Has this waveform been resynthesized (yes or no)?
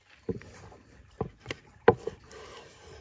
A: no